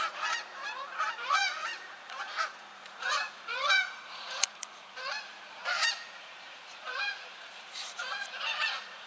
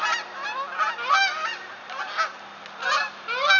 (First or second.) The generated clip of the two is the first